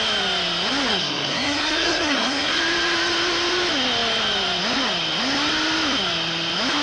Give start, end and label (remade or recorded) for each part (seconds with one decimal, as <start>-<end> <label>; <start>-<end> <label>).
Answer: 0.0-0.9 recorded; 0.9-2.6 remade; 2.6-6.8 recorded